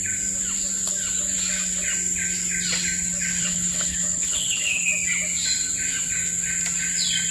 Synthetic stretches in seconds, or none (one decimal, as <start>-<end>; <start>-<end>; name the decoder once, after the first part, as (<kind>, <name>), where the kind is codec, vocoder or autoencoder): 3.4-4.9 (codec, HILCodec)